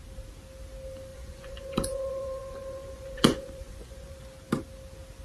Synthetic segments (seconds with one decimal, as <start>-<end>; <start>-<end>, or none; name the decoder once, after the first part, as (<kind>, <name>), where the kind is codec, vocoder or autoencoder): 1.1-4.2 (vocoder, Vocos)